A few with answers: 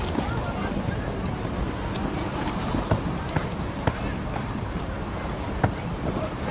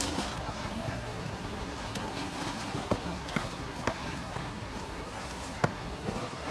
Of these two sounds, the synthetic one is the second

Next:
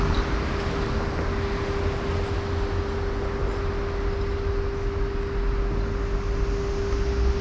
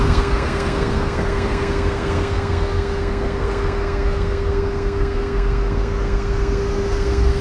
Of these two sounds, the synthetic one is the second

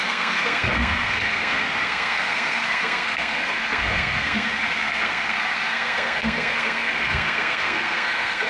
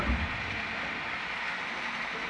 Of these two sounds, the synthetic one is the first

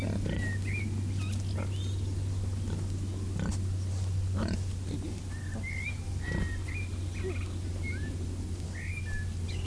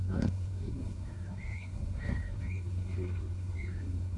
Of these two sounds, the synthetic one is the second